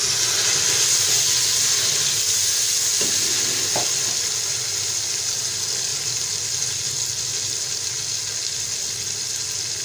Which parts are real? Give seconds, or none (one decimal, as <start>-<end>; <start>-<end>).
0.0-5.9; 6.8-9.8

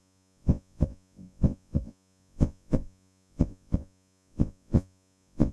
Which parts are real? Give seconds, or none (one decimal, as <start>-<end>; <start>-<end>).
none

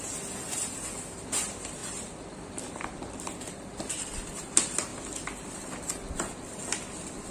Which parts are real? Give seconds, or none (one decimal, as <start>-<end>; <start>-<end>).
0.0-1.8; 4.5-7.3

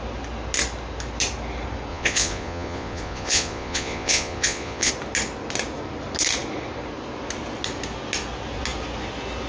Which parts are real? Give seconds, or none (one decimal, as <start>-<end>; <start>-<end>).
0.0-1.9; 4.9-9.5

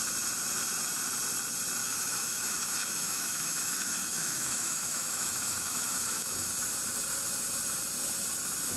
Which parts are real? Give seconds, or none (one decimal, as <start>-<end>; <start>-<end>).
0.0-1.8; 6.5-8.8

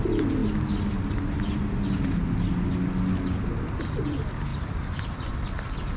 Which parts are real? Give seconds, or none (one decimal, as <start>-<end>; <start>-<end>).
0.0-4.5; 5.3-6.0

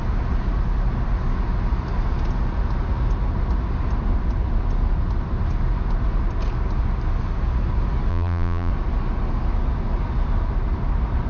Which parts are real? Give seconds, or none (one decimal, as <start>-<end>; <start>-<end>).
0.0-8.1; 8.7-11.3